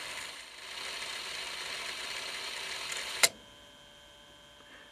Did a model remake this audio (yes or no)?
no